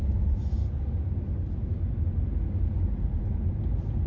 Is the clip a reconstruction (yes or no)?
no